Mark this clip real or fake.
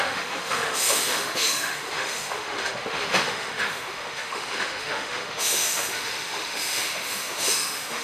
fake